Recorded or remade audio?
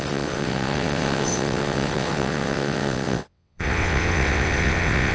remade